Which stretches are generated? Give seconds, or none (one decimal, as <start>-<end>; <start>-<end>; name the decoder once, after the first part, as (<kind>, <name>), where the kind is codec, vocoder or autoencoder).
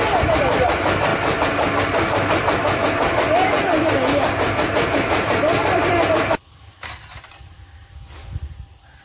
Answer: none